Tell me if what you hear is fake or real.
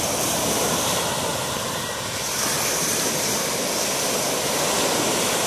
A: real